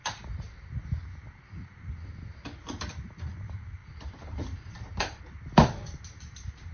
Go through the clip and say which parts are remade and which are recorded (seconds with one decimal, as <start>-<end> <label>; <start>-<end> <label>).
0.0-3.8 recorded; 3.8-5.2 remade; 5.2-6.7 recorded